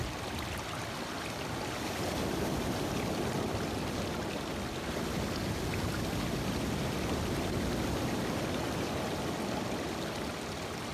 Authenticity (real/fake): real